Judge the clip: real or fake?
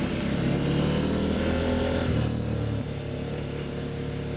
real